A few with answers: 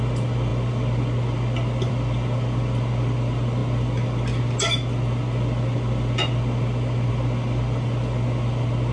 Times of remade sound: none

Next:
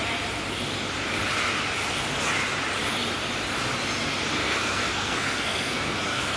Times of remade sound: 4.4-6.4 (codec, SNAC)

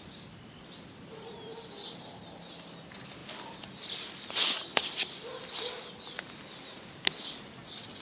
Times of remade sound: none

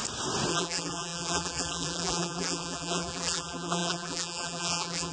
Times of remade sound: 0.5-5.1 (vocoder, BigVGAN v2)

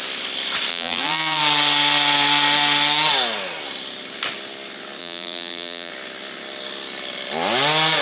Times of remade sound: 0.7-1.4 (vocoder, BigVGAN v2); 5.0-5.9

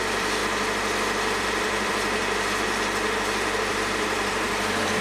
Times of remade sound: 0.0-0.4 (vocoder, BigVGAN v2); 1.4-2.2; 3.7-5.0